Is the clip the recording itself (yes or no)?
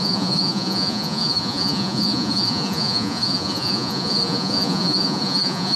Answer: no